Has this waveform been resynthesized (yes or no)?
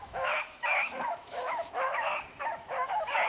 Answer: yes